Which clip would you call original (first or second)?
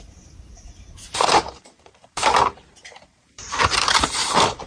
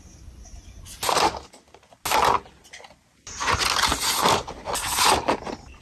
second